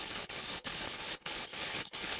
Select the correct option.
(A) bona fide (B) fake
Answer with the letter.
B